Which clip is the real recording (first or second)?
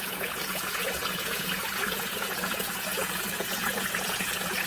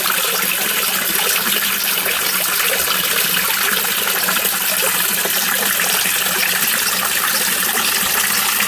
second